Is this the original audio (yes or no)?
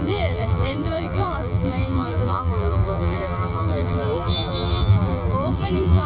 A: no